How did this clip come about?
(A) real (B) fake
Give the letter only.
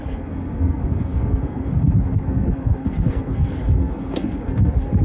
B